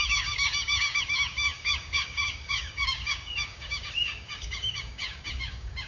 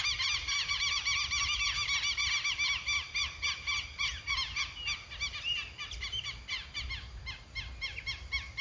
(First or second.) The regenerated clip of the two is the first